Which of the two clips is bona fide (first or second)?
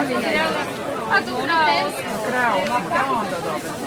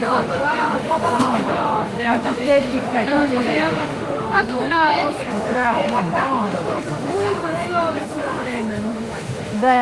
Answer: first